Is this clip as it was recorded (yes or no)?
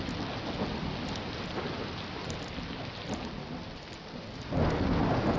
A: yes